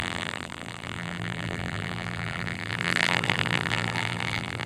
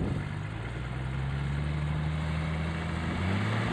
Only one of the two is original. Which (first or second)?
second